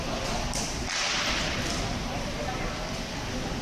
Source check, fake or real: real